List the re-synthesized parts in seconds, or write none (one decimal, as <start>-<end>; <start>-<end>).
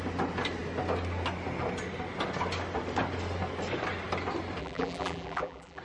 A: 4.6-5.8